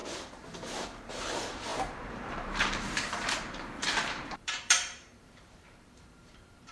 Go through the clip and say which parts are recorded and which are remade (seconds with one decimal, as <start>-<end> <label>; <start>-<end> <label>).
0.0-6.7 remade